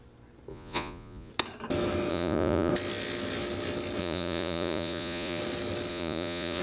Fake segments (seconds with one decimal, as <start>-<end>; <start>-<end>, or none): 0.5-1.3; 2.1-2.7; 4.0-5.4; 5.9-6.6

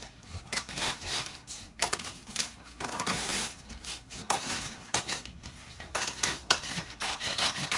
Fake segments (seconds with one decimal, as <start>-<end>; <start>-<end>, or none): 0.0-7.8

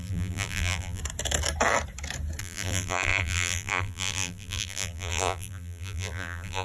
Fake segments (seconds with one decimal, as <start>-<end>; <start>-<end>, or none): 0.0-1.0; 2.4-6.6

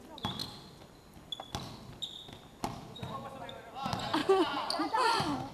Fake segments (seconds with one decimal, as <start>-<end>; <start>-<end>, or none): none

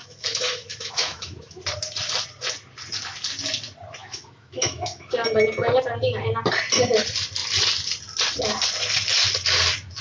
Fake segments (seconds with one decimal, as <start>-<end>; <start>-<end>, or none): 0.0-1.6; 4.0-5.1

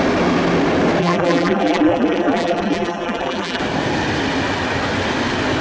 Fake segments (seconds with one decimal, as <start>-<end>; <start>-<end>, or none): 1.0-3.6

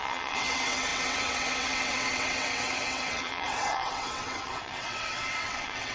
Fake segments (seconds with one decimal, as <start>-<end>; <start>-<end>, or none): 0.0-5.9